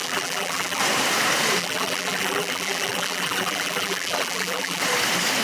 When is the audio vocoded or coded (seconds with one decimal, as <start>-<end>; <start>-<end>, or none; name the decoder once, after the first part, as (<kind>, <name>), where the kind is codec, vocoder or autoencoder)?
0.0-0.8 (vocoder, BigVGAN v2); 1.6-4.8